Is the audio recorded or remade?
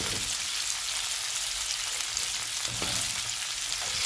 recorded